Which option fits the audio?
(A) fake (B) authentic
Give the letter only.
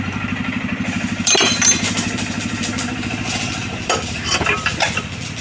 A